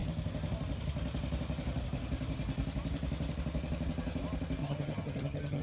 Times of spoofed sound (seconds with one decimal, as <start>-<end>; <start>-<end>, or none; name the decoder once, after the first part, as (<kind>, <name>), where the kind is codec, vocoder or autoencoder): 4.6-5.6 (vocoder, HiFi-GAN)